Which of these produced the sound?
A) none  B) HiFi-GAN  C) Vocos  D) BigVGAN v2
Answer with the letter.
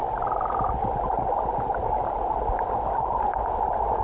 A